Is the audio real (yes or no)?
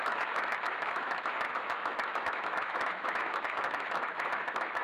no